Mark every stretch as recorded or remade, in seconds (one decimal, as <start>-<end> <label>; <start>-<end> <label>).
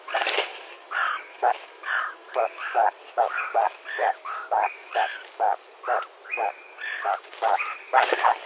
0.0-5.7 remade; 5.7-6.3 recorded; 6.3-8.5 remade